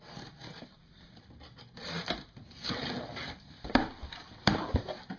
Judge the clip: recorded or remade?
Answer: recorded